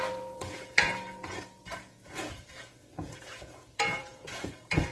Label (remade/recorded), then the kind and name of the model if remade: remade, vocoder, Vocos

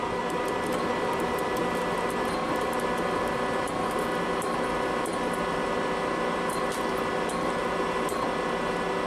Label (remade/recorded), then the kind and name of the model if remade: recorded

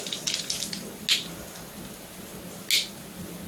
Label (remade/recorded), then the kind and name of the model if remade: recorded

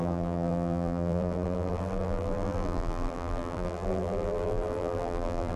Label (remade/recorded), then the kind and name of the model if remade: remade, vocoder, BigVGAN v2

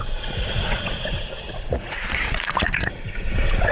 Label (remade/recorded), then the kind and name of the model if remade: remade, vocoder, Vocos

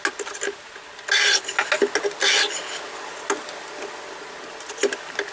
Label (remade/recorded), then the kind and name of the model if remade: recorded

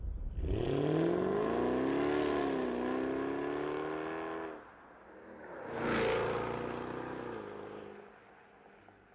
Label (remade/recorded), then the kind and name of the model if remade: recorded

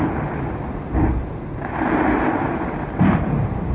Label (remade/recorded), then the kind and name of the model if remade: recorded